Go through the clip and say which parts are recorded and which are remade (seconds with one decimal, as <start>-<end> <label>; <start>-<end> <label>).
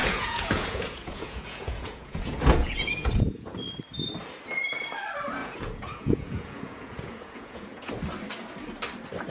0.0-3.7 remade; 3.7-5.4 recorded; 5.4-7.9 remade; 7.9-9.3 recorded